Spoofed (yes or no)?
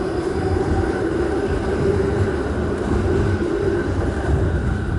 yes